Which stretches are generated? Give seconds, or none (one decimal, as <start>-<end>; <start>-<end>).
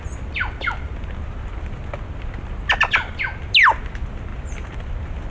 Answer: none